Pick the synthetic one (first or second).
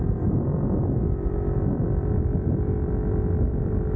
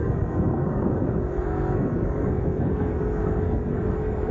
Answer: second